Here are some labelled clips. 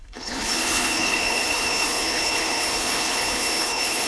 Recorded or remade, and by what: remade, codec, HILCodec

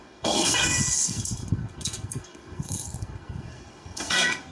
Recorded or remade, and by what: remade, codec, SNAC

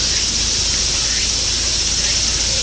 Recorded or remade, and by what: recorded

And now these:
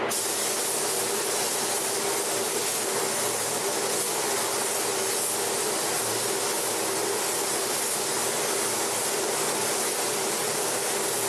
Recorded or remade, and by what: recorded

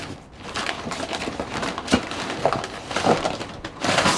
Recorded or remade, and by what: recorded